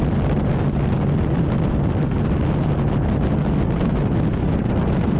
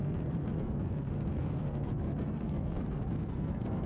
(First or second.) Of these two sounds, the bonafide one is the first